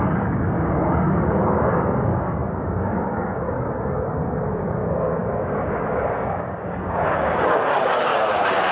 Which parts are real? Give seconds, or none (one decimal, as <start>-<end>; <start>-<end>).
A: none